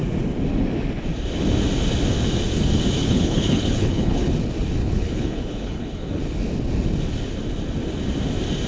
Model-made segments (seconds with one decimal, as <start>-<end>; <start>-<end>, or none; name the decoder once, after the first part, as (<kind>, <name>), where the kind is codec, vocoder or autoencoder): 3.0-4.3 (codec, HILCodec); 4.8-6.2